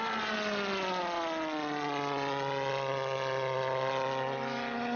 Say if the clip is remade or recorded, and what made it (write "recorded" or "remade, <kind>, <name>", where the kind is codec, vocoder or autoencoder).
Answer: recorded